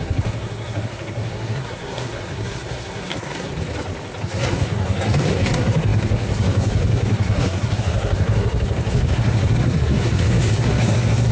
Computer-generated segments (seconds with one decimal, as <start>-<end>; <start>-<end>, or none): 0.0-3.5; 4.2-11.3